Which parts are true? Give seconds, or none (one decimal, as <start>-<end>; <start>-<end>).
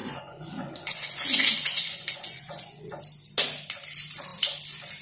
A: 3.0-5.0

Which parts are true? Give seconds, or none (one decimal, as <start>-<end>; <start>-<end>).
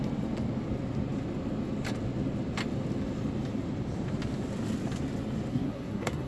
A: 0.0-5.5